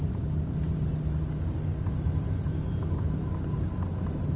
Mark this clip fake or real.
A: real